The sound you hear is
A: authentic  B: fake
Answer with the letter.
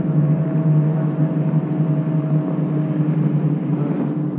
A